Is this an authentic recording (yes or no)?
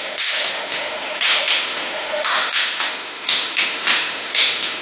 no